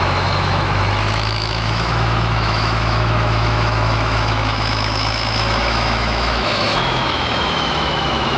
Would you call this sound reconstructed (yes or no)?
yes